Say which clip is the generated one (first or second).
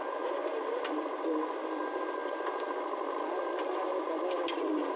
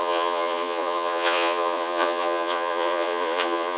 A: second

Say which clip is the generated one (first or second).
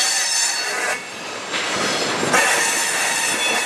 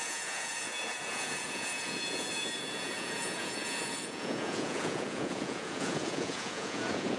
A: second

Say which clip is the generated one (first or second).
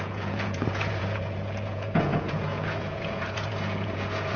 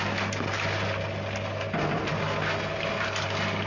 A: first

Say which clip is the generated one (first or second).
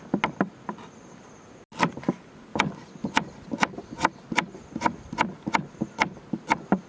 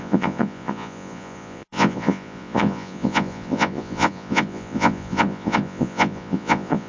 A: second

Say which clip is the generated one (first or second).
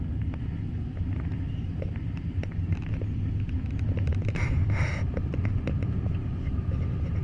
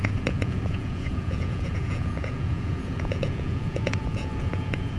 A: second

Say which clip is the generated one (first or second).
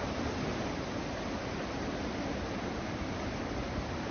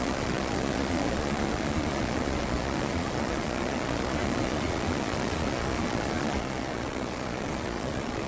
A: second